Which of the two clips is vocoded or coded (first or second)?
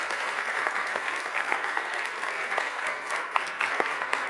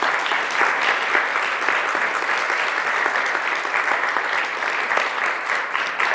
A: first